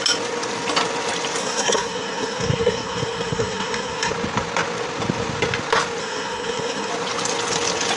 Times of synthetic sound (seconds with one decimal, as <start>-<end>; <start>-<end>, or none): 1.4-4.1; 6.0-6.9